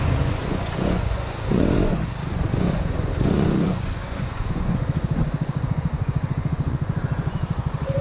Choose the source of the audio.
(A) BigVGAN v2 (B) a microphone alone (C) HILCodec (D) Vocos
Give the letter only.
D